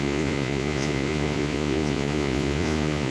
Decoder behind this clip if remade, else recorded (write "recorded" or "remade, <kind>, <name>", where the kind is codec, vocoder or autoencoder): remade, vocoder, Vocos